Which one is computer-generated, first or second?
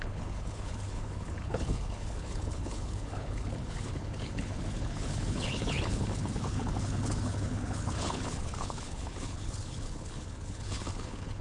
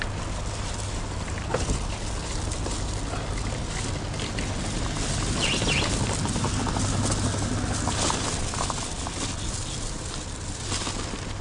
first